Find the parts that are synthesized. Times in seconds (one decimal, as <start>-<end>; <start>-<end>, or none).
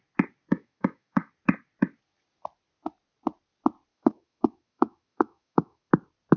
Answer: 0.5-1.3; 3.9-5.9